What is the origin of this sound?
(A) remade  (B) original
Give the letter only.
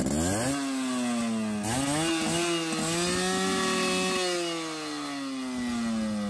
B